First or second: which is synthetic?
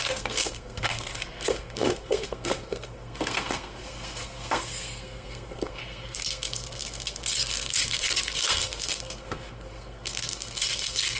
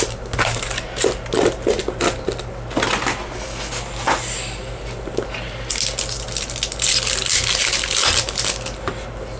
first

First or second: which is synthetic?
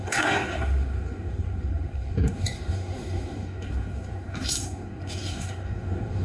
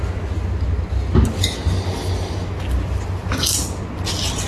first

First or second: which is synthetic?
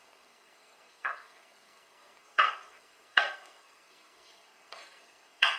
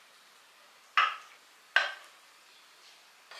first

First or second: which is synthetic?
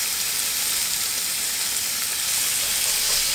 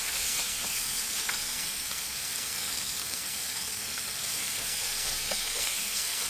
second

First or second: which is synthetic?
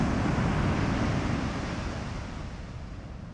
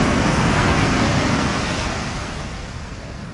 second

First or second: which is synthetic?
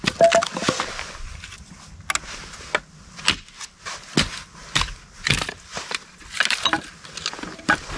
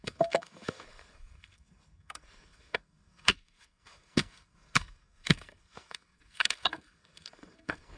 second